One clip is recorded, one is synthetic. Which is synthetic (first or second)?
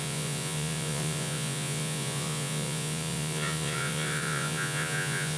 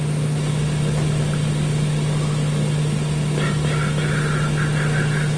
first